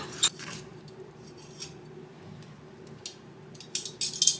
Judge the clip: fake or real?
real